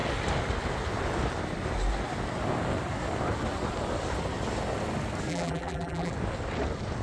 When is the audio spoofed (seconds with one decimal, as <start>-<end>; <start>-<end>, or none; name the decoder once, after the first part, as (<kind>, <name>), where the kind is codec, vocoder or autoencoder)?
5.3-6.1 (vocoder, BigVGAN v2)